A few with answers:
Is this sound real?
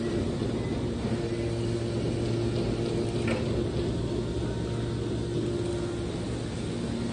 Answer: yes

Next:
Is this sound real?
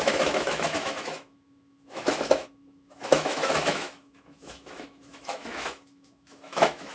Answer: no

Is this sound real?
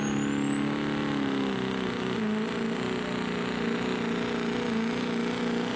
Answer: yes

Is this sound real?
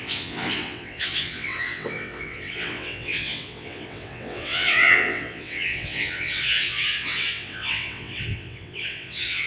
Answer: no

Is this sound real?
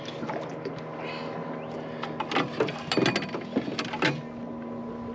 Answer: yes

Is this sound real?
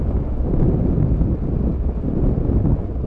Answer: yes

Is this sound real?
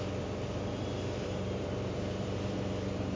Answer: no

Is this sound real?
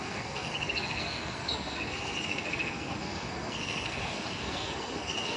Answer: no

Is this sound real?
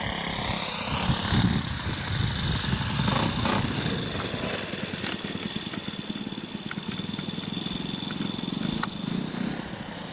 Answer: yes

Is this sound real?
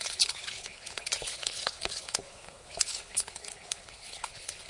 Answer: no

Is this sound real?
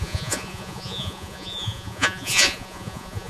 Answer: no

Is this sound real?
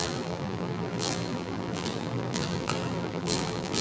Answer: no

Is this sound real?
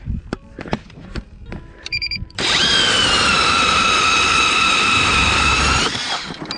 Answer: no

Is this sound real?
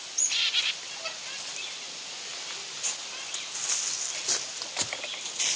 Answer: yes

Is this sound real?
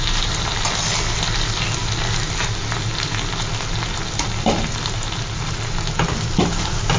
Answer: yes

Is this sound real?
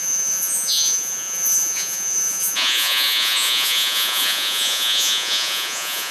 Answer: no